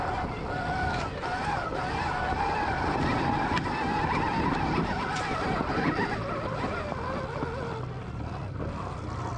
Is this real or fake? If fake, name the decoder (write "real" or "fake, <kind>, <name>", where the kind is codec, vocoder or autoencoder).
real